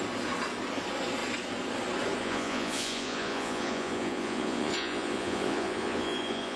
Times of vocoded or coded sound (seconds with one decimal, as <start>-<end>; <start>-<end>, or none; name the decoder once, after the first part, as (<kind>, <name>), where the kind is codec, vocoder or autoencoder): 2.2-6.6 (vocoder, Vocos)

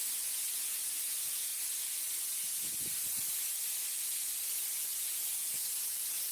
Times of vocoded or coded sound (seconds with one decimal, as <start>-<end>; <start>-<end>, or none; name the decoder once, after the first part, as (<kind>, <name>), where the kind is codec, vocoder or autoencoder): 0.0-1.5 (vocoder, Vocos); 4.8-6.3

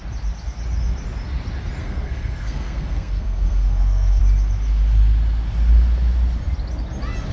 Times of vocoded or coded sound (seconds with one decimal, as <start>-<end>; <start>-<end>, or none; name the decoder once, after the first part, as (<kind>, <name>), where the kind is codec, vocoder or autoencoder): 1.8-4.2 (codec, SNAC)

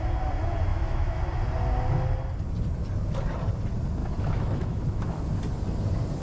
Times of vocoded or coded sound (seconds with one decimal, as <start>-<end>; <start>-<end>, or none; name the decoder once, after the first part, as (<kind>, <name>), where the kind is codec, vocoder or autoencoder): 0.7-1.2 (autoencoder, DAC-VAE); 4.0-5.2